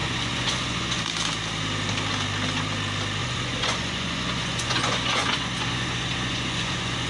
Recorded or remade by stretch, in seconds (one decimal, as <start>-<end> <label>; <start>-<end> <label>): 0.0-1.0 remade; 1.0-3.2 recorded; 3.2-7.1 remade